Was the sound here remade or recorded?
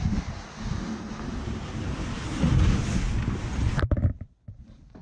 recorded